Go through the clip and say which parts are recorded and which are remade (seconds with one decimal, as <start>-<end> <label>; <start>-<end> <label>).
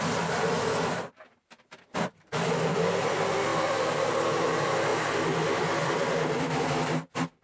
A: 0.0-7.4 remade